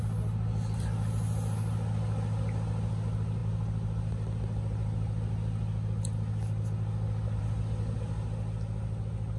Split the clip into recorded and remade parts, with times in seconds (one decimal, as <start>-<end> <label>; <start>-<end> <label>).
0.0-9.4 recorded